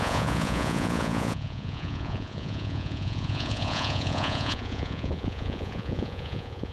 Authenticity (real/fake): fake